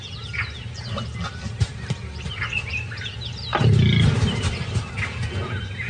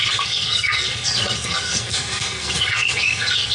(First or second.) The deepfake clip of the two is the second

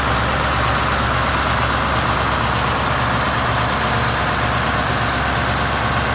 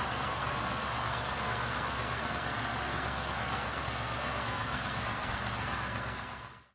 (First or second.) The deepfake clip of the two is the second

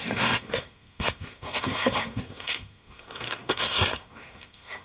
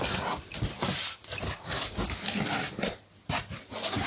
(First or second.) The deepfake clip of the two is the first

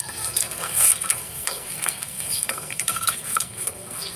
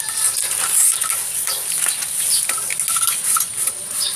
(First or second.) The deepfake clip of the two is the first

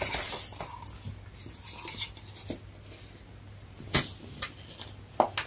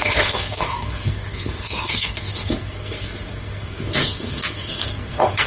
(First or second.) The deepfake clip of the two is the second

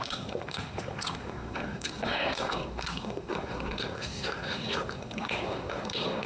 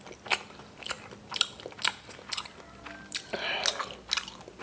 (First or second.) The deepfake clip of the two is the first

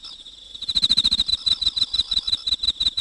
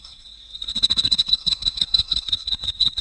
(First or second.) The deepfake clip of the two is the second